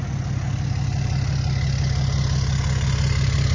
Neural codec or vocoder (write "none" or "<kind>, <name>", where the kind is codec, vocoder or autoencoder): none